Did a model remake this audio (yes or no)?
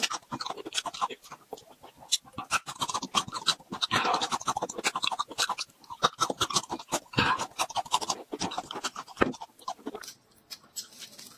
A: no